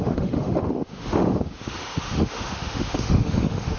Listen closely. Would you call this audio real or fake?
fake